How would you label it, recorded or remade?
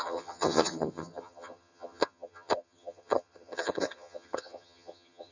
remade